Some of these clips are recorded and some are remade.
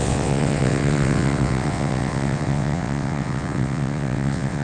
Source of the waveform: remade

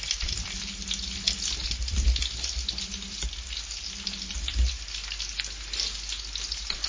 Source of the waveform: recorded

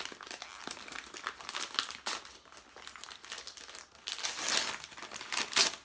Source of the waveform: recorded